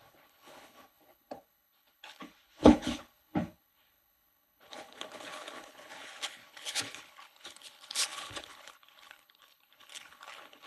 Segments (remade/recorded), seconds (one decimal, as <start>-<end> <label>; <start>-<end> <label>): 0.0-10.7 remade